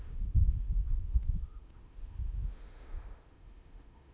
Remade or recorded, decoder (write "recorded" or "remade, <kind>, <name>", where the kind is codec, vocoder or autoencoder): remade, autoencoder, DAC-VAE